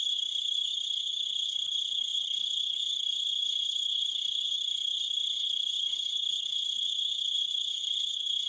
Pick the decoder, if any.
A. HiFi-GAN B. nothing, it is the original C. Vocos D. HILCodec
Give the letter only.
D